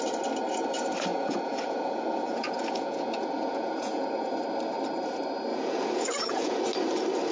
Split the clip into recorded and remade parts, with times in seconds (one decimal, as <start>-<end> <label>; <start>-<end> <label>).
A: 0.0-1.1 recorded; 1.1-4.3 remade; 4.3-5.5 recorded; 5.5-6.6 remade; 6.6-7.3 recorded